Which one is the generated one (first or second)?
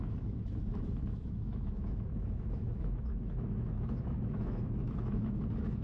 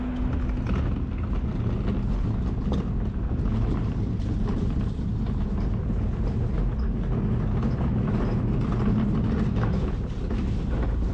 first